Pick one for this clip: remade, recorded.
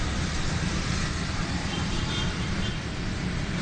remade